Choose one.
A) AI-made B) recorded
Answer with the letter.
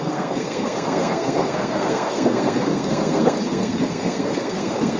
A